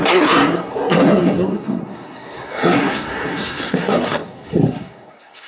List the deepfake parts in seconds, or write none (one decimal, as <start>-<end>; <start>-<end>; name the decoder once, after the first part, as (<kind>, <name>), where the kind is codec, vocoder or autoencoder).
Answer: 0.0-5.5 (codec, SNAC)